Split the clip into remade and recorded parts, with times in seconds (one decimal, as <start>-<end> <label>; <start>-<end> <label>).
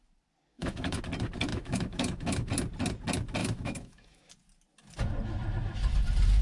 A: 0.0-0.5 recorded; 0.5-1.0 remade; 1.0-1.5 recorded; 1.5-2.5 remade; 2.5-3.4 recorded; 3.4-4.3 remade; 4.3-6.4 recorded